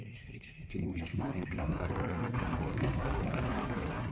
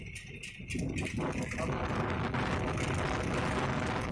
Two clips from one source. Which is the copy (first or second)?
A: first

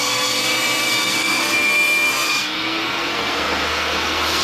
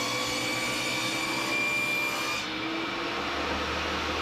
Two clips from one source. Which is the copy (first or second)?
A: first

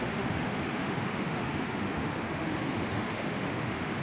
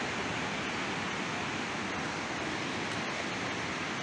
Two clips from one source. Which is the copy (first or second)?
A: first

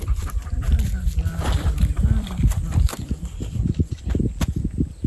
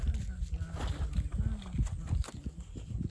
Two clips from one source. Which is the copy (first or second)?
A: first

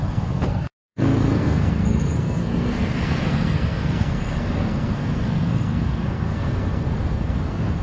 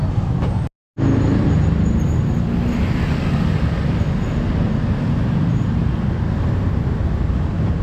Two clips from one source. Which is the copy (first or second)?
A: first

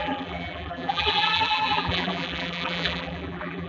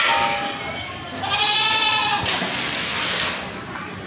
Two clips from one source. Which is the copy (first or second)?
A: first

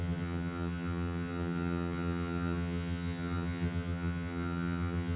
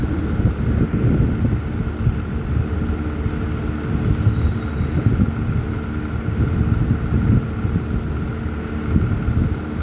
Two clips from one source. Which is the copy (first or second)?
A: first